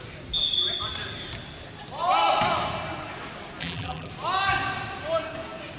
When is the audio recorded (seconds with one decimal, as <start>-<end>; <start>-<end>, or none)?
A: 0.0-3.6; 4.1-5.8